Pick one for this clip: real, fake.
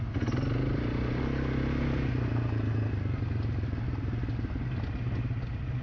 real